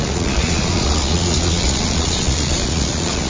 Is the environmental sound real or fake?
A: fake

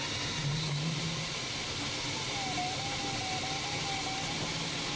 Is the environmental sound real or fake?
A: real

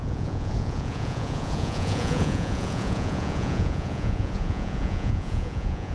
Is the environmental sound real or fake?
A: fake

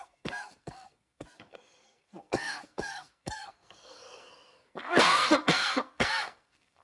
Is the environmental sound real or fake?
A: fake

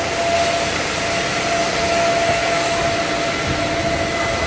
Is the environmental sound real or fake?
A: real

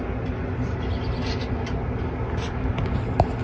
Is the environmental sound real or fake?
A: real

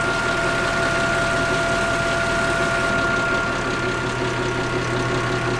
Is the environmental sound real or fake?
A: real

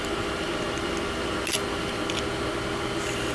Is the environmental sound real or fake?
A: real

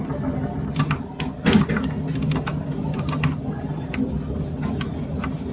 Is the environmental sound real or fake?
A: real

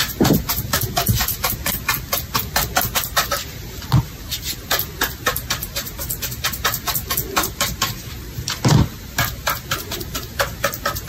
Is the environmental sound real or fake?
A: real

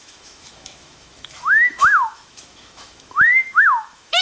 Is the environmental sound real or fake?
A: fake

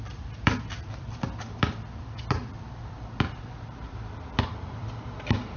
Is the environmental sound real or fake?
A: fake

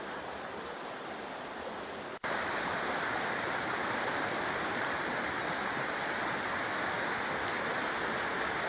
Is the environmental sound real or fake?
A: real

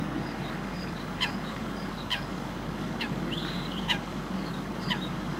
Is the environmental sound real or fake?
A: fake